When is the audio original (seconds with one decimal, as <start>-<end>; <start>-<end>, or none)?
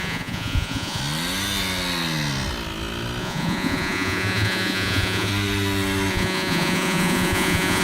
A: 1.0-3.2; 5.3-6.1